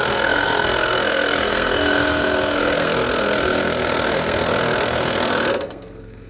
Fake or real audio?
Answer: fake